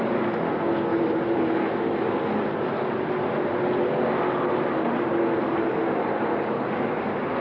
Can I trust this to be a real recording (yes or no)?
yes